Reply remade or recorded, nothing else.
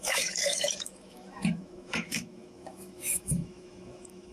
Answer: remade